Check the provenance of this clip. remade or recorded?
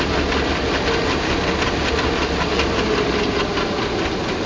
recorded